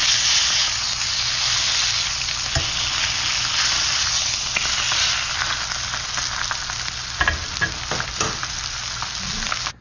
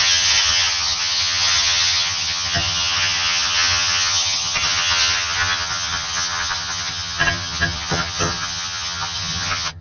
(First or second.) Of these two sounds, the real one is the first